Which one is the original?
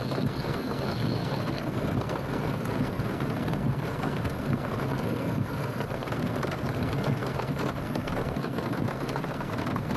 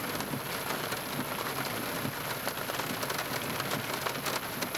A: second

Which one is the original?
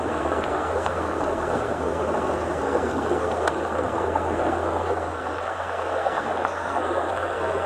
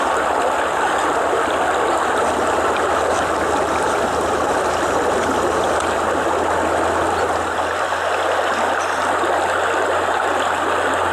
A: second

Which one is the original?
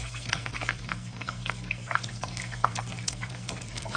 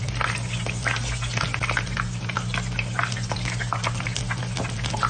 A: second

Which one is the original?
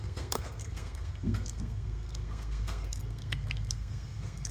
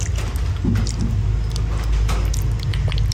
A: second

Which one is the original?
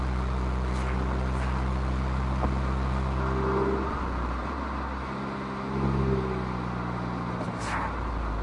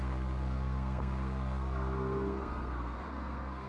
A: first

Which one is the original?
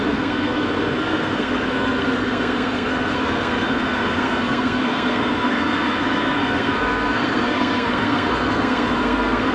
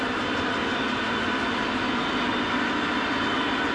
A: second